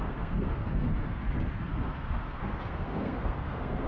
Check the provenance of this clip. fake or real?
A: fake